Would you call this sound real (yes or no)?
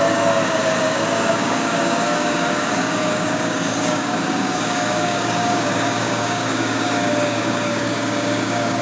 no